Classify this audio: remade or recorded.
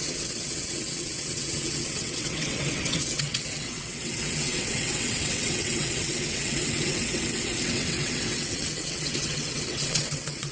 remade